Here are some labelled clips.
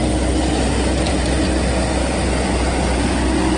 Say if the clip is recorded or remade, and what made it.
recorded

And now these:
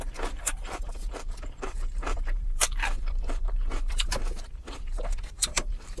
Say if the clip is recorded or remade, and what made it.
remade, vocoder, BigVGAN v2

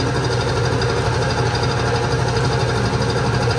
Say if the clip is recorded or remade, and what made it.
recorded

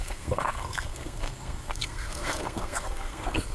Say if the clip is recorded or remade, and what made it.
remade, codec, SNAC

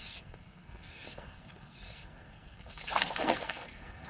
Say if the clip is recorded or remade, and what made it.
remade, codec, SNAC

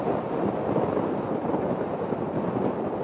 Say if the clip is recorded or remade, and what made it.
recorded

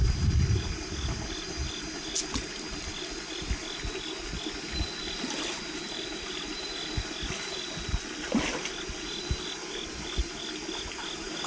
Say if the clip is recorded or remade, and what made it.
recorded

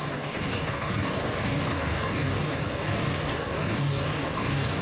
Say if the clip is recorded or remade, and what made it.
remade, codec, DAC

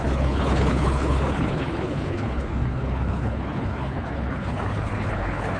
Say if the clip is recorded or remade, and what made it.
remade, codec, HILCodec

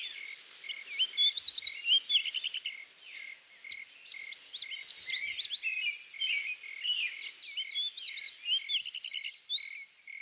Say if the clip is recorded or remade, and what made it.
recorded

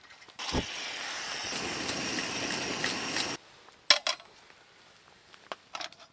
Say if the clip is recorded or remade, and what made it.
recorded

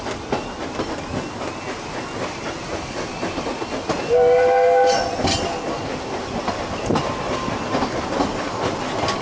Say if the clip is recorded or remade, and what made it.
recorded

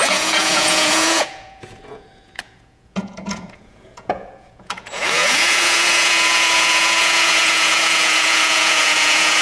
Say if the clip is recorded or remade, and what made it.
remade, vocoder, Vocos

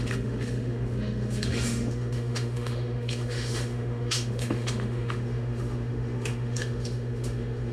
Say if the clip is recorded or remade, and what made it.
remade, autoencoder, DAC-VAE